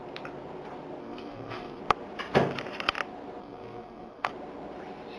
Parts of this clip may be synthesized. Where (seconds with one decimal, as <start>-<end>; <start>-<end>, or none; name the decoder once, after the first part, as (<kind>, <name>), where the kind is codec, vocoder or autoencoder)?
1.0-1.8 (codec, SNAC); 3.4-4.3